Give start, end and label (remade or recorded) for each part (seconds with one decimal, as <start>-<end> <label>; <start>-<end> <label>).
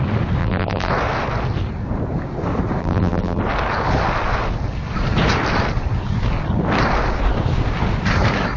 0.0-0.4 recorded; 0.4-0.9 remade; 0.9-2.8 recorded; 2.8-3.4 remade; 3.4-8.6 recorded